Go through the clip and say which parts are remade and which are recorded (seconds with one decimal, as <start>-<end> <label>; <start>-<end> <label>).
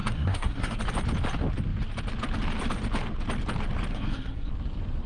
0.0-0.8 remade; 0.8-3.9 recorded; 3.9-4.5 remade; 4.5-5.1 recorded